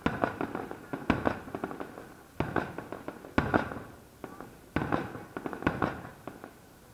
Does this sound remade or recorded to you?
recorded